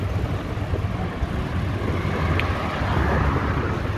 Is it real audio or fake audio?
real